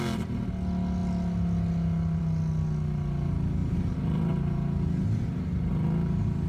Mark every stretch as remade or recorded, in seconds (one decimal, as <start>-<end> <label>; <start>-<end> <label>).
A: 0.0-3.6 recorded; 3.6-5.7 remade; 5.7-6.5 recorded